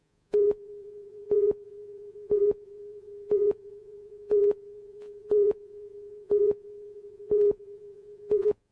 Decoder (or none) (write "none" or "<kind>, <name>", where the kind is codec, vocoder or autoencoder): vocoder, Vocos